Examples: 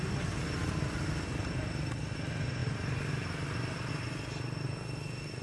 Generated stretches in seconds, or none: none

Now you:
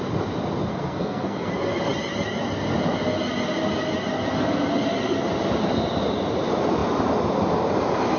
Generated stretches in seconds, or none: 0.7-1.5 (codec, SNAC)

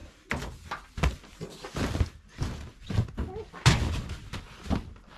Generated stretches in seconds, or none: none

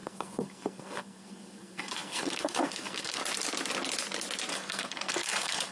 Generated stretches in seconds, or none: 0.0-3.2 (codec, SNAC); 4.5-5.7